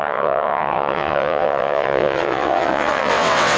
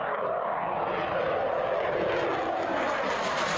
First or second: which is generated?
first